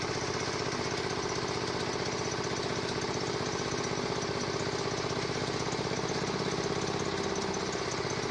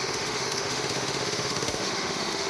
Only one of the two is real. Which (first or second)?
first